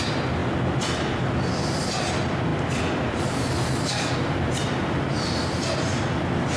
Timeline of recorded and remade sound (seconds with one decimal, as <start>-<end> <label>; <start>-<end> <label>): 0.0-6.6 recorded